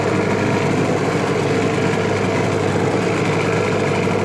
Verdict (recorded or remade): recorded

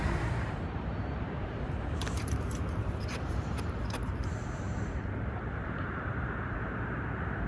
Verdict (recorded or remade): remade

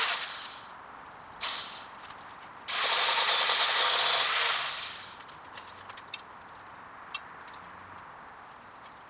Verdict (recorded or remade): recorded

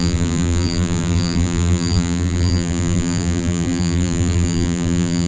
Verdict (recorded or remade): remade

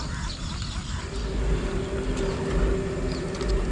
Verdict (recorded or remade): recorded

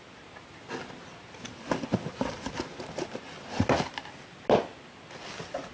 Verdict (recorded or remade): recorded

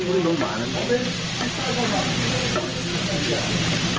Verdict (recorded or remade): remade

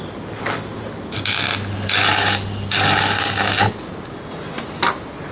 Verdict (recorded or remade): recorded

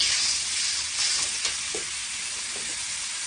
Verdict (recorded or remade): recorded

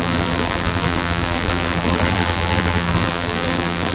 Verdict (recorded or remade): remade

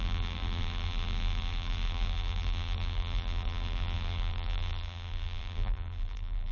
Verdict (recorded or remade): remade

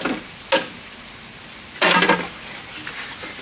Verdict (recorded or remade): recorded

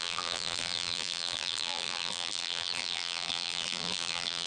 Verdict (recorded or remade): remade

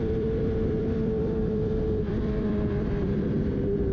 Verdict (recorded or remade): remade